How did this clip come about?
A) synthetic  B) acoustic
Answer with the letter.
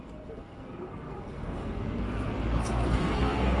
A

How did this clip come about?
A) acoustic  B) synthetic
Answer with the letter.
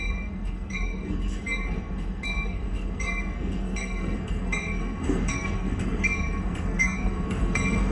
B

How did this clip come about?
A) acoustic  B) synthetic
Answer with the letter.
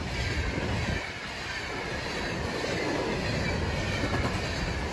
A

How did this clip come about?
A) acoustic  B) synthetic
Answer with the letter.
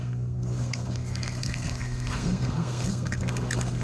B